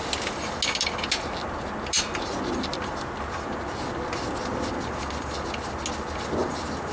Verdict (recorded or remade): recorded